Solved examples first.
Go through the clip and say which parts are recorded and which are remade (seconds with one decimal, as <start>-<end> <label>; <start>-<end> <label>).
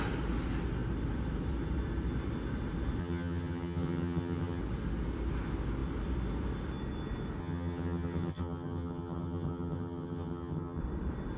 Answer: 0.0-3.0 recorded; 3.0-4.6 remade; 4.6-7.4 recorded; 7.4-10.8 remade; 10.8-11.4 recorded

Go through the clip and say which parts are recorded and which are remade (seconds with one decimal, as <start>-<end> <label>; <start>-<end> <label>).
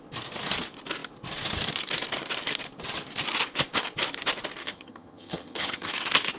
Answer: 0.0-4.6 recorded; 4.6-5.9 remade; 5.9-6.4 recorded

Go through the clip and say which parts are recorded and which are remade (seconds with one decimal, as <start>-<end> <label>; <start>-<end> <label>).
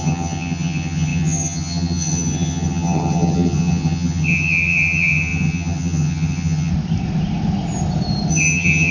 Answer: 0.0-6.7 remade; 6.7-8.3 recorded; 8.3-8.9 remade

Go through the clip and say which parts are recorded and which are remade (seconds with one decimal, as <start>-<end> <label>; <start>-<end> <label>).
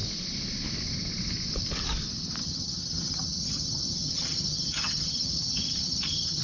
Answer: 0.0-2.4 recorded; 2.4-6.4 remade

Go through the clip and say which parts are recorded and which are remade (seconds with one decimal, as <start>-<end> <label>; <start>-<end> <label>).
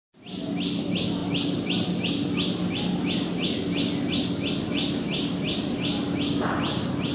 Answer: 0.0-7.1 recorded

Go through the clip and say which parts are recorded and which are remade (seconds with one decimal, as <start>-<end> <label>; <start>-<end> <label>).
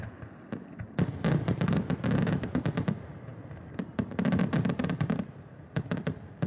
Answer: 0.0-6.5 recorded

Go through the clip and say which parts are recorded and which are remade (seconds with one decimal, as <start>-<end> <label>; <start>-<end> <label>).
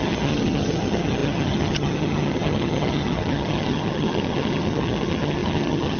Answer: 0.0-6.0 remade